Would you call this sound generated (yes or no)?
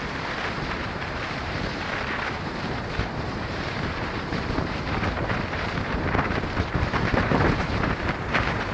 yes